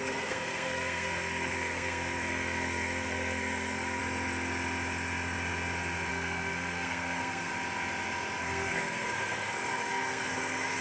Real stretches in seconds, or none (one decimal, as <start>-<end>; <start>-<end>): 4.0-6.1; 7.5-8.4